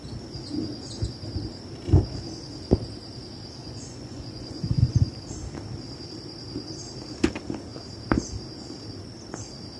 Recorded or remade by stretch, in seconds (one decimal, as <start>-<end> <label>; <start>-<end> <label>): 0.0-3.6 recorded; 3.6-5.2 remade; 5.2-9.8 recorded